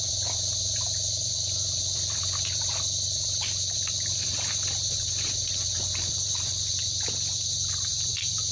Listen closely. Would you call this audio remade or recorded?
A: remade